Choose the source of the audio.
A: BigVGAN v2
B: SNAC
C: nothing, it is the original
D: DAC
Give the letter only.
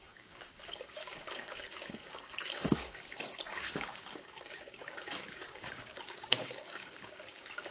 D